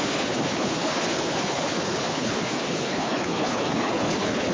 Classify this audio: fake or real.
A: fake